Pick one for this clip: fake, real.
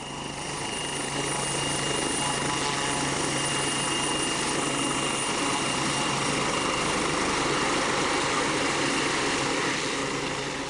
real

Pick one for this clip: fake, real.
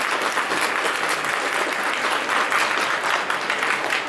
real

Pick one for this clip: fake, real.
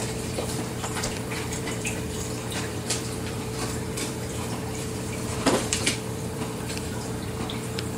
fake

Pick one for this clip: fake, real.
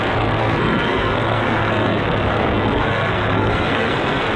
fake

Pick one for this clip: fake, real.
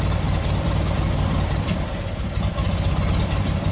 real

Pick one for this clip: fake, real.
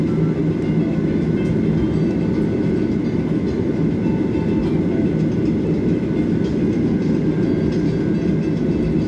real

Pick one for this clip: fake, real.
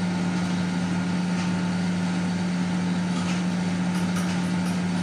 real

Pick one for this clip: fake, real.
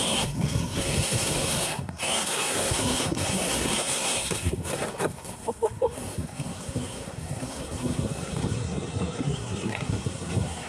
fake